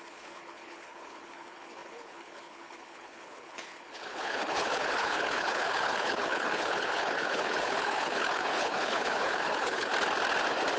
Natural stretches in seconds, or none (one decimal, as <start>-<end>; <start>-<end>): 9.9-10.8